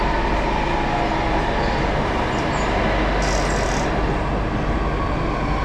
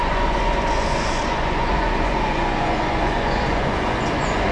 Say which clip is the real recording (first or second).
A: first